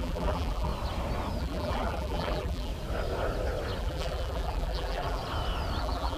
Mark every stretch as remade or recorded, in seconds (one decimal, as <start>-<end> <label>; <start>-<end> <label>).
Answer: 0.0-0.7 remade; 0.7-1.4 recorded; 1.4-2.7 remade; 2.7-3.8 recorded; 3.8-5.2 remade; 5.2-5.8 recorded; 5.8-6.2 remade